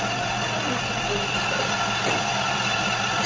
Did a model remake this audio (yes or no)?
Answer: no